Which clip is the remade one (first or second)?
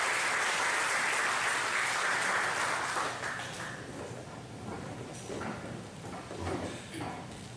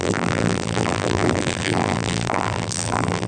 second